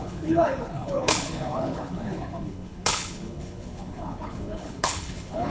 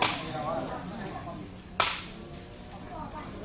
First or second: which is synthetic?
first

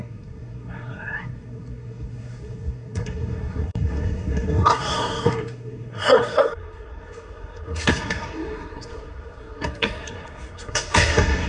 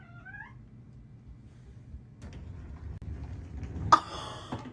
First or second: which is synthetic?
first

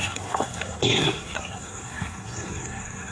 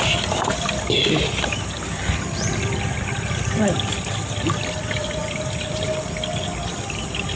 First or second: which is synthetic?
first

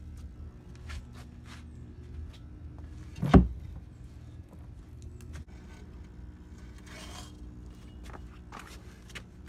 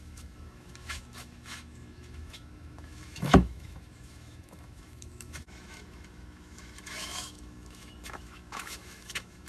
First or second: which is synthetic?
second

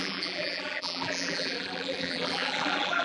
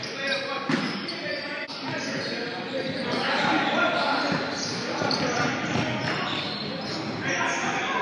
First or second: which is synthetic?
first